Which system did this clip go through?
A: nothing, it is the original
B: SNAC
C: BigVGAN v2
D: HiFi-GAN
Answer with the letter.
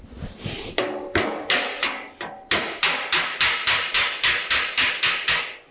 A